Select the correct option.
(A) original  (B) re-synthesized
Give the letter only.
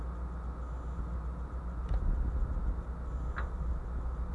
A